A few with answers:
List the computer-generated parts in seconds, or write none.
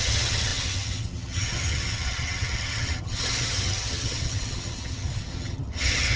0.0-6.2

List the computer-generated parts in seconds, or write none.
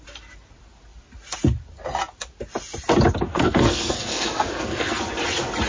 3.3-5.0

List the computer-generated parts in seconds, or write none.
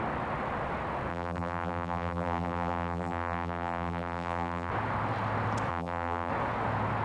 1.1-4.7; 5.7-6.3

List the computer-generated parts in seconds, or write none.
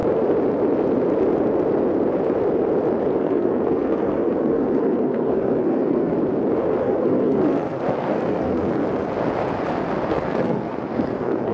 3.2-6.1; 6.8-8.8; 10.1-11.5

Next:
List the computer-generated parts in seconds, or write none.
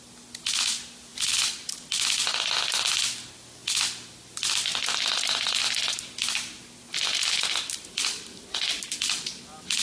1.1-1.7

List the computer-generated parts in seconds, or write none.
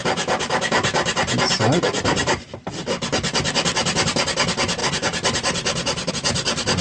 0.0-2.7; 4.8-6.1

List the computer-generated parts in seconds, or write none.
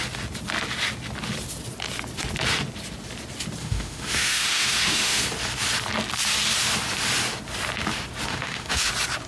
3.6-5.2; 8.3-8.9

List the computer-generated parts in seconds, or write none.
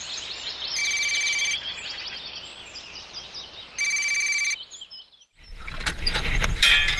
none